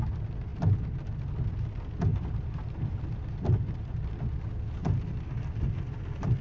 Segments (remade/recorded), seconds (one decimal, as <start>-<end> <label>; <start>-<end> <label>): 0.0-2.1 recorded; 2.1-4.1 remade; 4.1-6.4 recorded